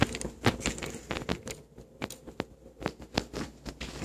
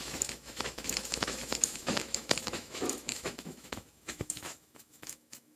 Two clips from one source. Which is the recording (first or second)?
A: first